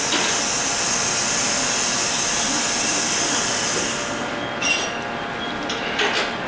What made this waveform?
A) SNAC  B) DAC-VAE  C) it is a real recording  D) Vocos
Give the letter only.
C